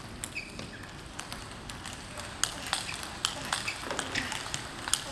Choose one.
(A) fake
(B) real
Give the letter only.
B